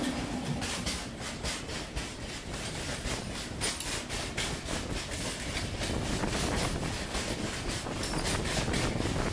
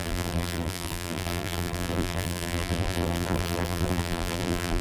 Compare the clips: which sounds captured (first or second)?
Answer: first